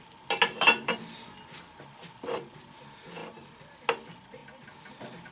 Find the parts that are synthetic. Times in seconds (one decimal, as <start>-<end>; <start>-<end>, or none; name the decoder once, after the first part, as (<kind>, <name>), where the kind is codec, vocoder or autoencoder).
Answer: none